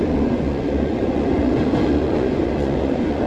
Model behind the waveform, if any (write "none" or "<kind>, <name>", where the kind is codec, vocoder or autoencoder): vocoder, Vocos